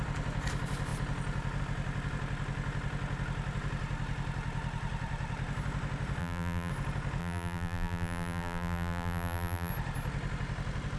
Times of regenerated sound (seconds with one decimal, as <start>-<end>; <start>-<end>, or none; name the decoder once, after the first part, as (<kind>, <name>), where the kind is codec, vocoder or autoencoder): 6.2-6.7 (vocoder, BigVGAN v2); 7.2-9.7